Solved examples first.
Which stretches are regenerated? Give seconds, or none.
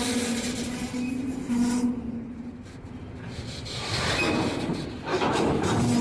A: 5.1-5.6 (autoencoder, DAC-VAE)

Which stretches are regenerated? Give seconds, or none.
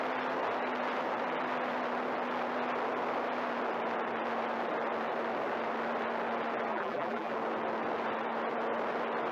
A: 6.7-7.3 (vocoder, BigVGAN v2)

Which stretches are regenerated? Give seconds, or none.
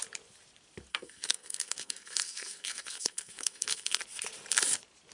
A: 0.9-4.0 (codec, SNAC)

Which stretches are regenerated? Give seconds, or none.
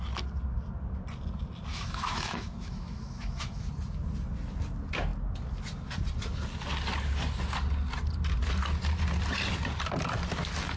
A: 1.7-3.7 (autoencoder, DAC-VAE)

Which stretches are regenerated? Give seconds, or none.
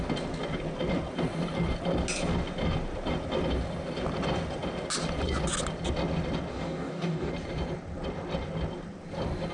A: 6.5-7.3 (codec, DAC)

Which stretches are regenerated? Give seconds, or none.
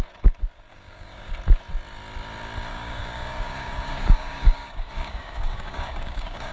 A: 0.7-1.3 (codec, DAC); 2.7-6.5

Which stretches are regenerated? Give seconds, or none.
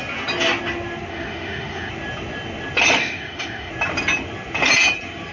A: 1.1-1.9 (autoencoder, DAC-VAE); 3.0-3.7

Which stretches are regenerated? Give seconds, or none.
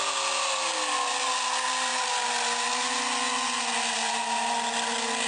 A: none